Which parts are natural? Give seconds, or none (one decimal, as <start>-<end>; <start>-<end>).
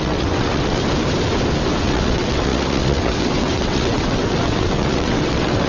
0.8-1.8